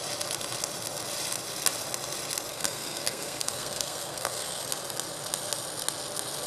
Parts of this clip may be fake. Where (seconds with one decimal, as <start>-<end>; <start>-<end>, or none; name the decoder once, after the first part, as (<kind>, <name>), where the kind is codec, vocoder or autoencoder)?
2.5-4.6 (codec, SNAC)